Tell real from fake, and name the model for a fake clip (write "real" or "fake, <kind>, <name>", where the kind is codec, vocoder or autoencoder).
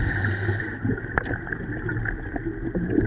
real